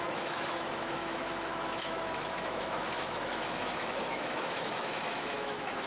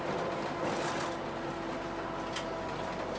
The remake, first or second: first